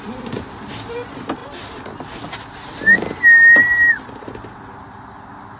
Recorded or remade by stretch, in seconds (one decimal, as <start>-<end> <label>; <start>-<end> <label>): 0.0-5.6 recorded